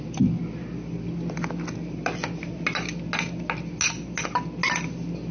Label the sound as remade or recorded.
recorded